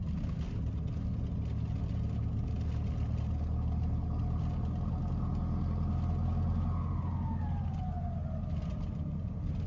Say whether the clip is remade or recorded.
recorded